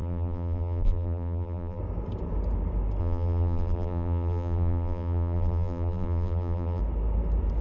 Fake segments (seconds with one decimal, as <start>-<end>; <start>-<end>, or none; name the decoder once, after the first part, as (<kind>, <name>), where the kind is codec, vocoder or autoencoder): 0.0-1.8 (vocoder, BigVGAN v2); 3.0-6.8